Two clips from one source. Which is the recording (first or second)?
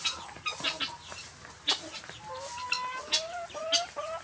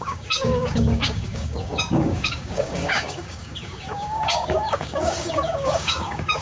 first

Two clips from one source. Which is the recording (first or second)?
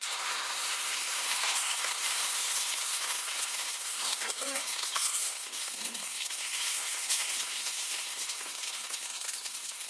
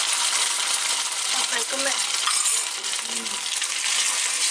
second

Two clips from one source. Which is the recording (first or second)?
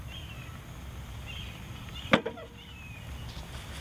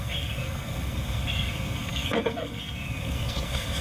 first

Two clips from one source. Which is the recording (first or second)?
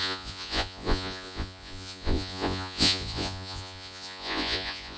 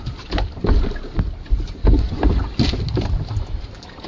second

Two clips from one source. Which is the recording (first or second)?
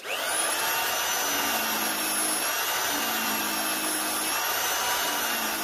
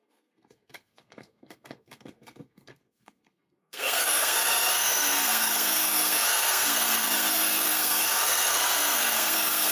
first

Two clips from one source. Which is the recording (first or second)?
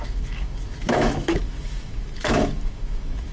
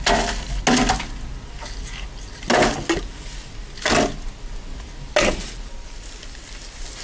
second